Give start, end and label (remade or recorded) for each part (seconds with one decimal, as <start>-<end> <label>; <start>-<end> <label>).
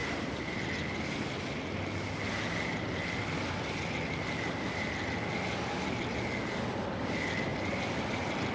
0.0-8.5 recorded